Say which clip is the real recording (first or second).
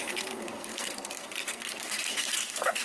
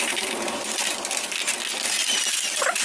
second